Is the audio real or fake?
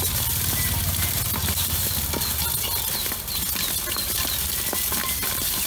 real